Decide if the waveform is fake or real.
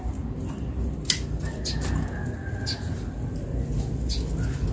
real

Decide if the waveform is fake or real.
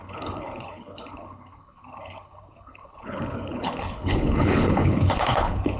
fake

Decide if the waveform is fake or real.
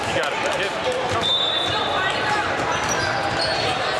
real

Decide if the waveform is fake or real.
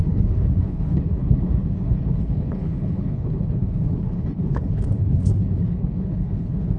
fake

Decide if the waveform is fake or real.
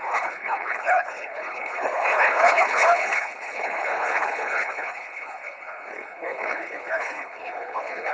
fake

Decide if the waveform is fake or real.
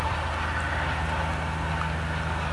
real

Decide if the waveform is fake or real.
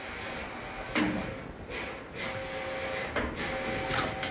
real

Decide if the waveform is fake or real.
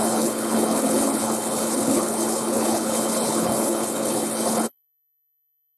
fake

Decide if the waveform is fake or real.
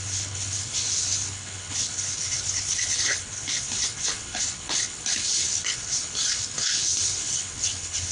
fake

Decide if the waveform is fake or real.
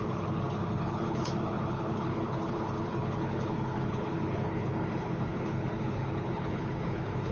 fake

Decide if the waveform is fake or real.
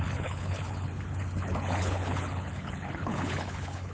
fake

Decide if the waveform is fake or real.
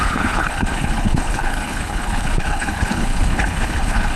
fake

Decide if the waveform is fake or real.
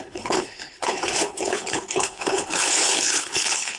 fake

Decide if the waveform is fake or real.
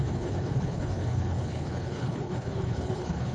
fake